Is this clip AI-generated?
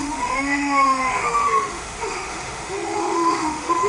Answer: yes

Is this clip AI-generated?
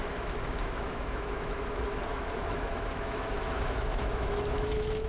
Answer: yes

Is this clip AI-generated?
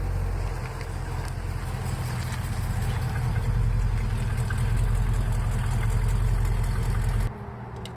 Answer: no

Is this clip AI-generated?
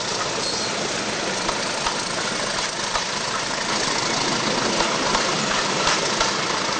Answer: no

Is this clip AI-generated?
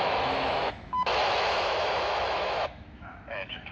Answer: yes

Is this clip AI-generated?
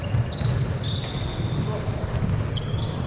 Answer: no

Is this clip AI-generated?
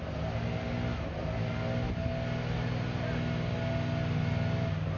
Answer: no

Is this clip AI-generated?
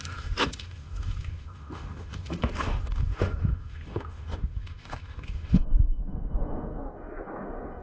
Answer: yes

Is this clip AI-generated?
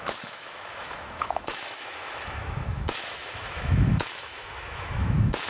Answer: yes